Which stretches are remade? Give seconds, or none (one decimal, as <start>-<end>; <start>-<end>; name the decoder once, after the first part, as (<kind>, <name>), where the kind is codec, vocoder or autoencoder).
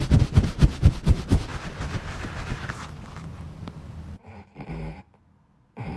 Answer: none